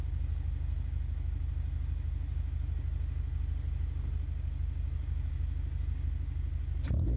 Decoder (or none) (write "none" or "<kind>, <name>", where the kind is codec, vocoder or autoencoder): none